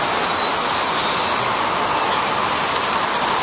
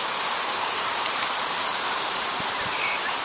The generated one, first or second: second